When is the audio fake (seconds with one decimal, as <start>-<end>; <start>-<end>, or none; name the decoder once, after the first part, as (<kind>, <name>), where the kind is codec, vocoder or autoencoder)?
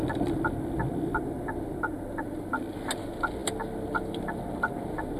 0.0-1.2 (vocoder, BigVGAN v2)